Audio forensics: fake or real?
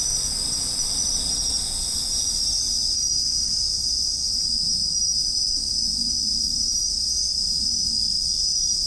real